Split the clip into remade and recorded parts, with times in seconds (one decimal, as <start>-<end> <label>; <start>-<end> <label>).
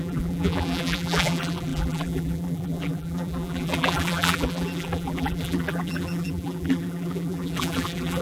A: 0.0-8.2 remade